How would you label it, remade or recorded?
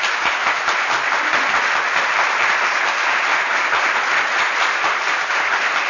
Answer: recorded